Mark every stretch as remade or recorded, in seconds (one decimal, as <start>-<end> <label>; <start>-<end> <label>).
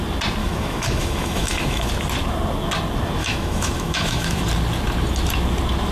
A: 0.0-0.4 recorded; 0.4-1.9 remade; 1.9-3.2 recorded; 3.2-4.4 remade; 4.4-5.9 recorded